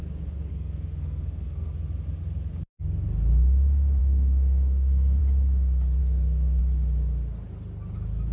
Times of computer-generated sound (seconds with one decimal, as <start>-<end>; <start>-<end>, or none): 0.5-1.7; 4.0-5.2; 6.0-6.6